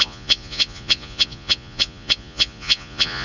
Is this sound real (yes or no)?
no